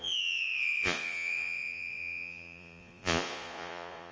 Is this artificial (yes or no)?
yes